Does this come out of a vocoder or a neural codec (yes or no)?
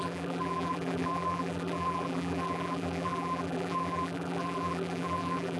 yes